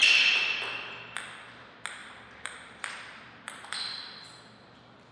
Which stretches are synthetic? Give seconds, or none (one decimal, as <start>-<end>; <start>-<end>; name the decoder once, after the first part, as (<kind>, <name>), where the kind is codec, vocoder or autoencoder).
2.0-2.9 (vocoder, BigVGAN v2)